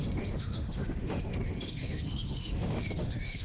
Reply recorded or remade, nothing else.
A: remade